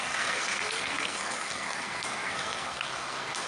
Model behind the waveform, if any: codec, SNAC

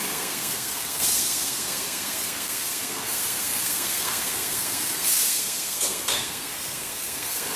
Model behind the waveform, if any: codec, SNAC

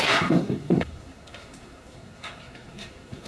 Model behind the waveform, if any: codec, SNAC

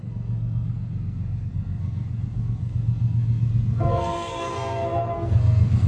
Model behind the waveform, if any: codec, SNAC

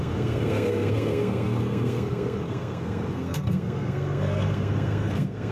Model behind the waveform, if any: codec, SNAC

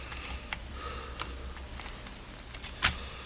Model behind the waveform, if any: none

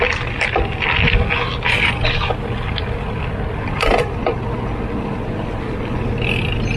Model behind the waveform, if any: none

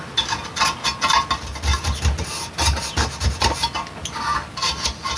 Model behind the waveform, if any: none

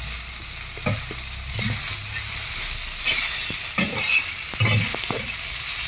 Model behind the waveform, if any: none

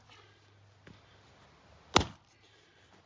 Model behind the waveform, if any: none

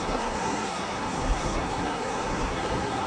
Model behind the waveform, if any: codec, SNAC